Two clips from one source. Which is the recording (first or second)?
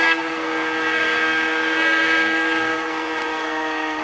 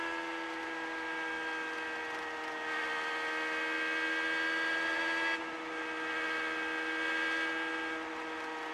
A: second